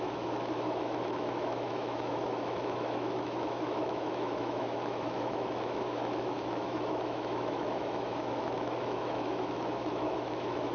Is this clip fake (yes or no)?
yes